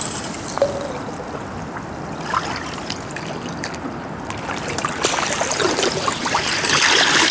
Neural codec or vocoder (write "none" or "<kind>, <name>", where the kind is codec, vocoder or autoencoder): none